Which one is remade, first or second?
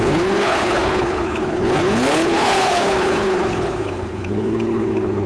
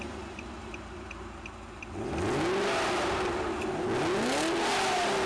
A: first